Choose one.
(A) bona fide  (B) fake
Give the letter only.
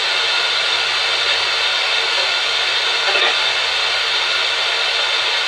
A